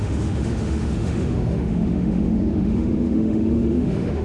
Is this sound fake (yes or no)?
yes